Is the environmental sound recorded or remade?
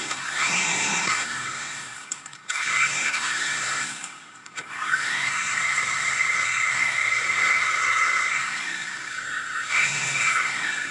remade